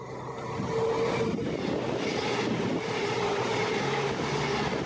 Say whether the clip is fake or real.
real